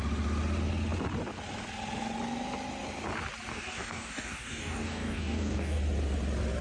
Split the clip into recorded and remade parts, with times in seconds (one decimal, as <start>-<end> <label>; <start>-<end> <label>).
0.0-3.5 recorded; 3.5-5.8 remade; 5.8-6.6 recorded